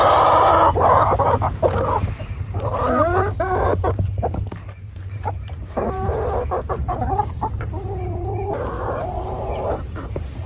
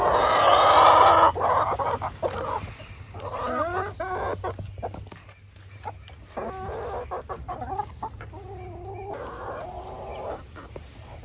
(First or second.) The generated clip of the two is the first